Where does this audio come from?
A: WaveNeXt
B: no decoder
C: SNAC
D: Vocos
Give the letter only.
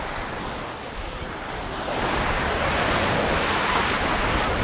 B